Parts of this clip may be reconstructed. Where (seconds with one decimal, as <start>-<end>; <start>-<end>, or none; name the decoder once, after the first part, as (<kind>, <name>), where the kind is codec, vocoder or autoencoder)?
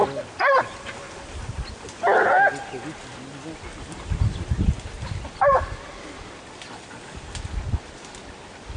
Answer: none